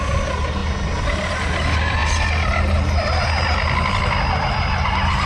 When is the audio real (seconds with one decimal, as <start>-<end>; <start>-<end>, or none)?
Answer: 0.0-5.3